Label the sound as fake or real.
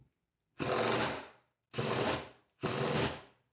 real